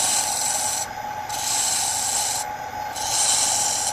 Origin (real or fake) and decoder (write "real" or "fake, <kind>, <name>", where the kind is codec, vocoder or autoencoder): real